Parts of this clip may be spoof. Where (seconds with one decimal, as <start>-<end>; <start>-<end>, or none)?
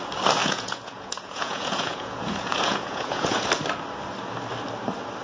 0.4-3.5